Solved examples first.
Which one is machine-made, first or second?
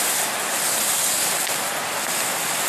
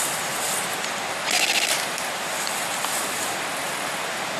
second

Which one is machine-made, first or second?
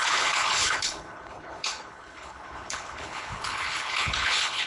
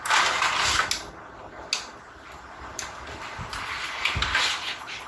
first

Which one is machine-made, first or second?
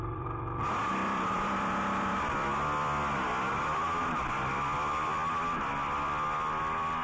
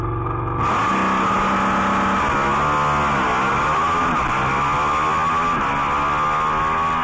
first